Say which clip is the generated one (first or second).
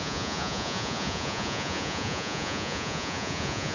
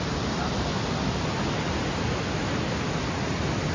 first